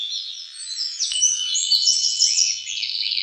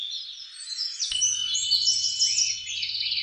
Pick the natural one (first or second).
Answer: second